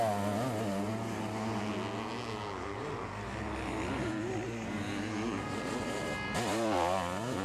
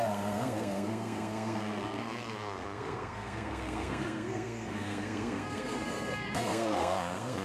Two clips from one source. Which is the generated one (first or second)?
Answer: second